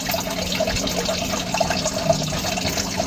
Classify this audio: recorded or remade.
recorded